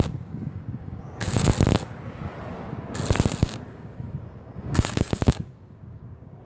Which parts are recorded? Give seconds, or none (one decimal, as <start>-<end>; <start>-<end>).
1.5-3.4